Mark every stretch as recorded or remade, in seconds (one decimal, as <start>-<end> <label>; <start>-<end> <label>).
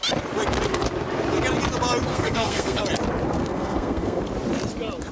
0.0-2.1 recorded; 2.1-2.8 remade; 2.8-3.4 recorded; 3.4-4.2 remade; 4.2-5.1 recorded